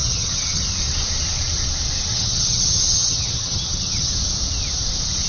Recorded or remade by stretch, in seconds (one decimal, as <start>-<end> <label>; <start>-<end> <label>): 0.0-0.6 remade; 0.6-2.1 recorded; 2.1-4.1 remade; 4.1-5.3 recorded

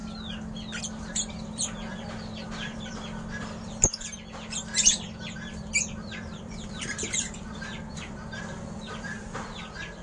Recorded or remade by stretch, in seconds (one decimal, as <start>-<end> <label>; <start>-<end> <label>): 0.0-0.8 recorded; 0.8-10.0 remade

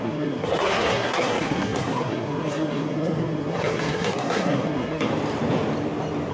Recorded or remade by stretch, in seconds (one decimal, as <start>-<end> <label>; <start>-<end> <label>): 0.0-5.1 remade; 5.1-6.3 recorded

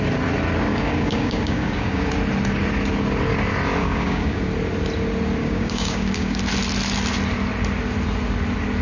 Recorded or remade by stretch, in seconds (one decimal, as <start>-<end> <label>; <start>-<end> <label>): 0.0-0.7 recorded; 0.7-2.1 remade; 2.1-3.8 recorded; 3.8-4.5 remade; 4.5-5.4 recorded; 5.4-6.4 remade; 6.4-8.8 recorded

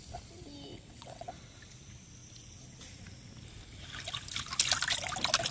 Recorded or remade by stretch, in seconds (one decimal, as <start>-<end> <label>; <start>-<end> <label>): 0.0-0.7 recorded; 0.7-1.3 remade; 1.3-5.5 recorded

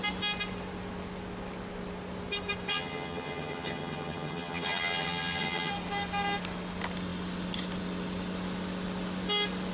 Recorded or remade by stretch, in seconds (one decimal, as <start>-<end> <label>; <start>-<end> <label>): 0.0-2.7 recorded; 2.7-5.7 remade; 5.7-9.7 recorded

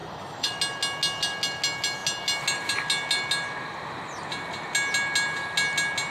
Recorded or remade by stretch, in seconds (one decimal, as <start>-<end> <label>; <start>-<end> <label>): 0.0-0.6 remade; 0.6-6.1 recorded

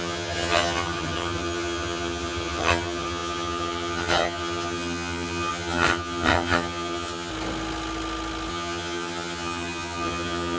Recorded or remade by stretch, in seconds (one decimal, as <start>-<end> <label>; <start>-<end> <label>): 0.0-7.3 remade; 7.3-8.5 recorded; 8.5-10.6 remade